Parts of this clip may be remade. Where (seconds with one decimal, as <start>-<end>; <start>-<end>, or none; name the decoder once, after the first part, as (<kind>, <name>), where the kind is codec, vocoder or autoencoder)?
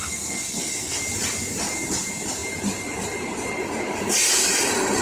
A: 0.0-1.0 (codec, SNAC)